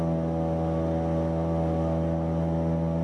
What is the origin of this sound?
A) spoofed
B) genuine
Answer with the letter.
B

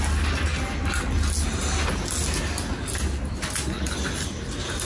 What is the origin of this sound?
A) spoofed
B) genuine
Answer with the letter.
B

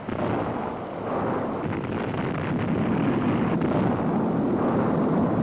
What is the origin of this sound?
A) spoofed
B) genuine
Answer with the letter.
B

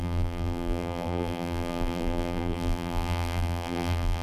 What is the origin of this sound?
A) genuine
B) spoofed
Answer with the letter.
B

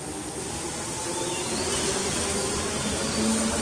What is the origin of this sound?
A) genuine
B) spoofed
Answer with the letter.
A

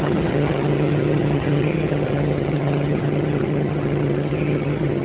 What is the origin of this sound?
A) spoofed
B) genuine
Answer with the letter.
A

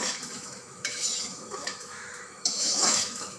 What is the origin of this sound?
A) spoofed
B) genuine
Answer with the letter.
A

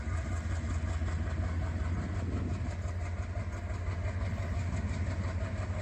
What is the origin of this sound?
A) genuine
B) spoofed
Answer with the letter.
A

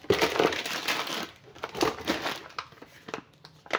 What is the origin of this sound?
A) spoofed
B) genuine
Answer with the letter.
A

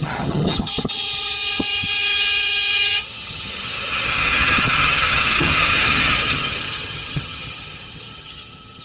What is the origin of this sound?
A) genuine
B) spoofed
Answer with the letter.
B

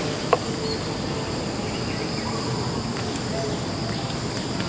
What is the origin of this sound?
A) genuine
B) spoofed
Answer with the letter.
A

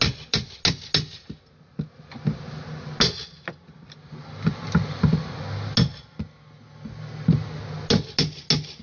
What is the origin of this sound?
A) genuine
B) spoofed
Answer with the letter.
A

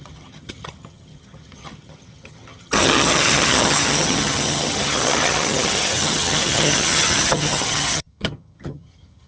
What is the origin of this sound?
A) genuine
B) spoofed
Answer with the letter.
B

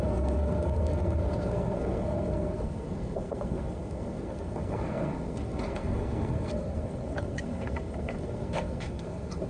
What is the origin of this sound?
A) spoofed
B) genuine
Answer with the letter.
A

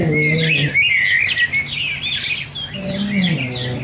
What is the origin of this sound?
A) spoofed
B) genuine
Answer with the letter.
B